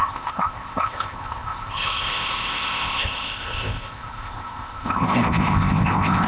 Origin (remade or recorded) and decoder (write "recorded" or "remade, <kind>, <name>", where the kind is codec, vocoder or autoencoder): remade, codec, ZipCodec